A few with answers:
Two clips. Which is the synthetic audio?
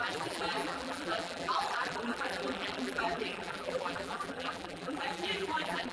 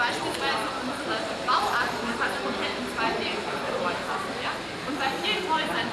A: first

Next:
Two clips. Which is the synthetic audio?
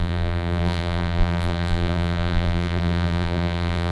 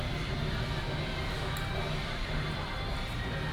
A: first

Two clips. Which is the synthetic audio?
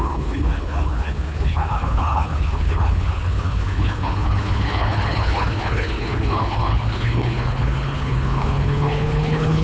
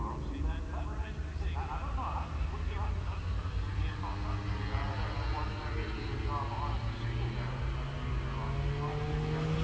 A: first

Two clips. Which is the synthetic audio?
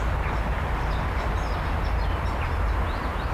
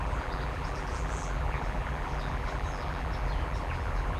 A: second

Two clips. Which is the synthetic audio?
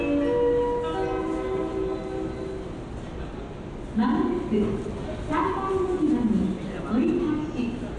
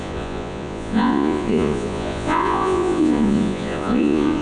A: second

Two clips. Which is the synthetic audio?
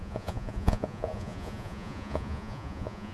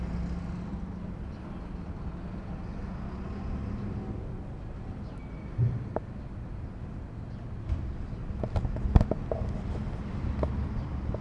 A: first